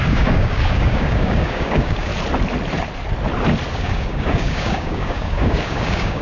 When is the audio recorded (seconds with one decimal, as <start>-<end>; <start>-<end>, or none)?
2.1-3.7